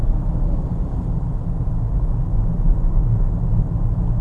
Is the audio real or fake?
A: real